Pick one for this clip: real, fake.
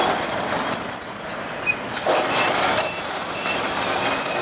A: real